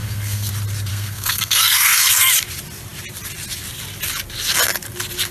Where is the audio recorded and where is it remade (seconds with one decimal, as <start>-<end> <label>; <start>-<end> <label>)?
0.0-0.5 remade; 0.5-0.9 recorded; 0.9-2.3 remade; 2.3-5.3 recorded